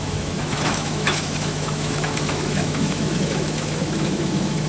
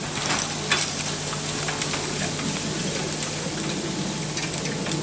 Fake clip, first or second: first